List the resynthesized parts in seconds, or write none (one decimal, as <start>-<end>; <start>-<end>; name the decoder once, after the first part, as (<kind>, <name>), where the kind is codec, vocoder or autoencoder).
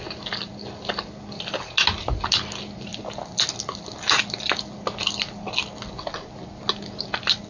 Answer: none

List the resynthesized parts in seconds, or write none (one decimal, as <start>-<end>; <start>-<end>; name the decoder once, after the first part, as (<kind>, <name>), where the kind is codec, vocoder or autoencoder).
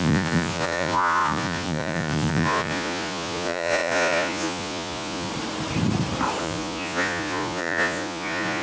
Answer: 0.0-5.3 (vocoder, Vocos); 6.4-8.6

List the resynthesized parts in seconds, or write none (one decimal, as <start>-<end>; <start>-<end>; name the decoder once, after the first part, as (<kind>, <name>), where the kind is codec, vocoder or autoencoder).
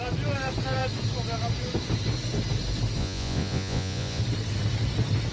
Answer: 3.0-4.2 (vocoder, Vocos)